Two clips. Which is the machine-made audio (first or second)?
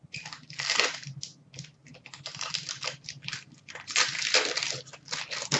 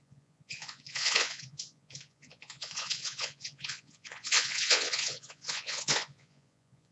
second